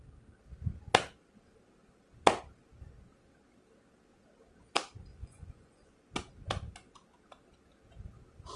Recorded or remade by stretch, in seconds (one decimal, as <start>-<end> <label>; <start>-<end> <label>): 0.0-5.1 recorded; 5.1-6.0 remade; 6.0-8.6 recorded